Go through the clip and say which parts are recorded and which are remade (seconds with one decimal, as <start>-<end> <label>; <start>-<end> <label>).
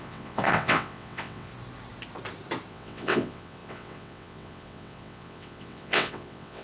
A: 0.0-1.5 remade; 1.5-2.7 recorded; 2.7-6.6 remade